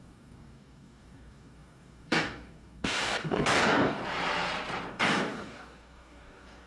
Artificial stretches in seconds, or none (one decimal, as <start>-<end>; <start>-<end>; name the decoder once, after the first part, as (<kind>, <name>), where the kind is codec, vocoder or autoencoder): 0.0-4.0 (codec, DAC); 4.9-6.7